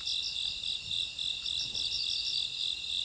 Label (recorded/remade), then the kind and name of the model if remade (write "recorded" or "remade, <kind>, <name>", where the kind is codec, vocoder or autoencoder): recorded